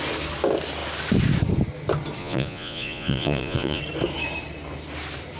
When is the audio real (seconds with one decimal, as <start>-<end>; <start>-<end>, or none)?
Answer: 0.0-2.2; 3.8-5.4